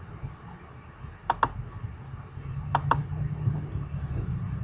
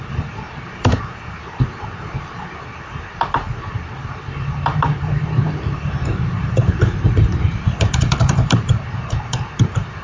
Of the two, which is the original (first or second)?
first